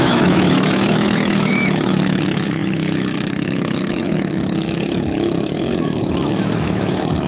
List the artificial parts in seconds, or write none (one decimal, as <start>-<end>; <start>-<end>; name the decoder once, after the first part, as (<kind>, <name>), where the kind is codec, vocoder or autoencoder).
0.0-7.3 (autoencoder, DAC-VAE)